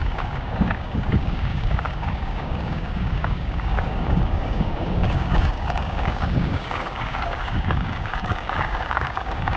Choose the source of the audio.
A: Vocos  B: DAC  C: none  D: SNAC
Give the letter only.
B